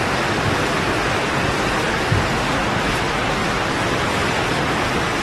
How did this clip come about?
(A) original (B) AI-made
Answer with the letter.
A